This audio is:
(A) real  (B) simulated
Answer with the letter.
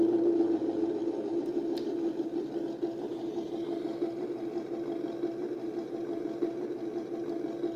B